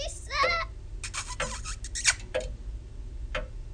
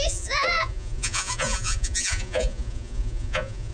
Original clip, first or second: first